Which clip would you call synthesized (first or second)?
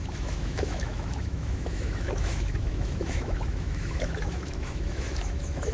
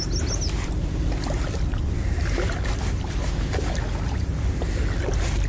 first